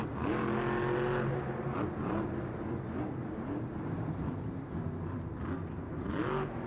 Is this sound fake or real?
real